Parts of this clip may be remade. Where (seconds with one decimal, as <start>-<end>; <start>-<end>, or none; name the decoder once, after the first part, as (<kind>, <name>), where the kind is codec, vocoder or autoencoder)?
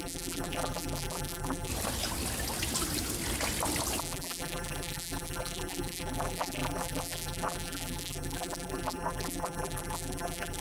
0.0-1.7 (vocoder, BigVGAN v2); 4.0-10.6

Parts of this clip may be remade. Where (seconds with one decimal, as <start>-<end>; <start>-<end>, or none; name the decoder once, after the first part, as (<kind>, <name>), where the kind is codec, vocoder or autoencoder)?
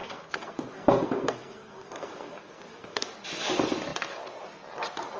0.0-3.1 (codec, SNAC)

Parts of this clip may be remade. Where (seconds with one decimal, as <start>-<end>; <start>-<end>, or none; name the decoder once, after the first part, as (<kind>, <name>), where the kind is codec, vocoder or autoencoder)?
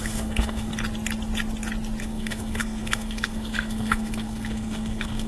0.0-0.7 (codec, SNAC); 2.0-5.3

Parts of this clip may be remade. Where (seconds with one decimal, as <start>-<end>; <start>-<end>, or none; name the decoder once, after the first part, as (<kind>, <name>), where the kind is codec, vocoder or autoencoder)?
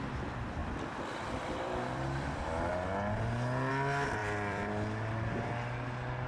0.6-2.3 (vocoder, BigVGAN v2); 4.2-5.5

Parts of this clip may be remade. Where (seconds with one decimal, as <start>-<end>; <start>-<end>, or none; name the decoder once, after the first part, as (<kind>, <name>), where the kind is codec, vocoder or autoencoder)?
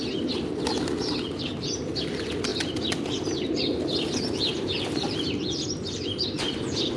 2.5-7.0 (vocoder, BigVGAN v2)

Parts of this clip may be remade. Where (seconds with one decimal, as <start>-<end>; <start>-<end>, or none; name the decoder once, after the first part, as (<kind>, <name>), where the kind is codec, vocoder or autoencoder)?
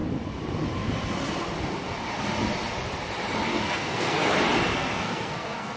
3.5-4.3 (codec, SNAC); 4.7-5.8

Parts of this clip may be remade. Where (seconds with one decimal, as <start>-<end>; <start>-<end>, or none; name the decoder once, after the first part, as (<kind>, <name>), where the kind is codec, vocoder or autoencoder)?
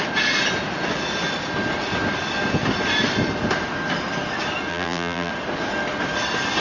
4.7-5.3 (vocoder, BigVGAN v2)